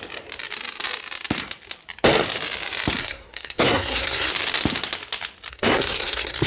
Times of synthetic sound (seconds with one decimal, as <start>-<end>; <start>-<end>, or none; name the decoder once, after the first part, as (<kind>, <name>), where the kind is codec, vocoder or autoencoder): 3.0-4.3 (codec, SNAC); 5.5-6.5

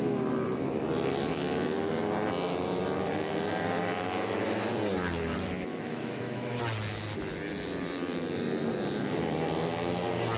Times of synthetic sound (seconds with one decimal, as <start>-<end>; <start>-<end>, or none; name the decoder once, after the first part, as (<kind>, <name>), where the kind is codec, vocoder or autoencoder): 5.7-6.6 (autoencoder, DAC-VAE)

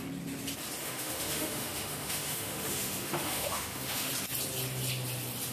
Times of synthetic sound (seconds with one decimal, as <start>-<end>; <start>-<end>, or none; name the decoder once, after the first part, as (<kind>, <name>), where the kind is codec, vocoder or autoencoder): 0.8-4.1 (autoencoder, DAC-VAE)